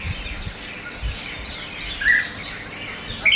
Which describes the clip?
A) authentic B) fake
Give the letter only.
A